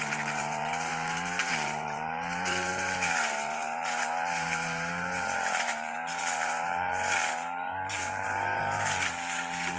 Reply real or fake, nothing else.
fake